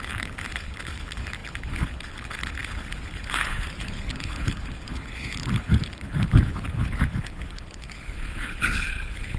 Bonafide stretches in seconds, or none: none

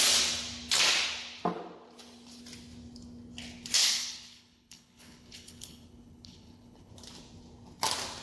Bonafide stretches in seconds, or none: 0.0-3.8; 6.9-8.2

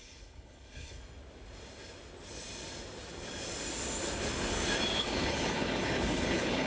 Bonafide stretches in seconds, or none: 1.0-5.0